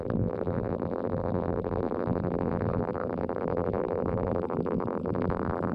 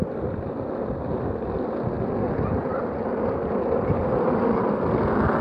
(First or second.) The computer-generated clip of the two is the first